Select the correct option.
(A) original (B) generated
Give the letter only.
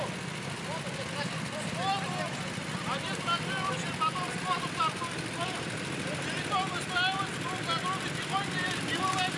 A